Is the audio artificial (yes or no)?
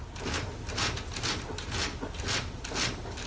no